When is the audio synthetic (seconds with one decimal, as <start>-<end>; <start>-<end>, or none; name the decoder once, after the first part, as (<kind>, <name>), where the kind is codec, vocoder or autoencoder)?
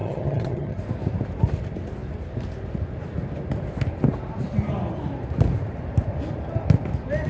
0.0-0.8 (vocoder, HiFi-GAN)